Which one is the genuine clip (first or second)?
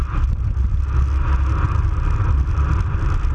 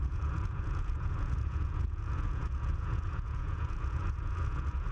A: first